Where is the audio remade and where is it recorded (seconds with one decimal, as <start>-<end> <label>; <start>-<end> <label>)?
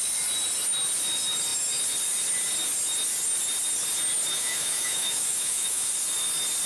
0.0-4.4 recorded; 4.4-5.9 remade; 5.9-6.7 recorded